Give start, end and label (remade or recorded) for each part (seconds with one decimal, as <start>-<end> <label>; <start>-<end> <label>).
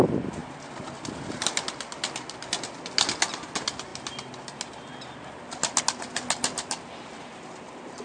0.0-8.0 recorded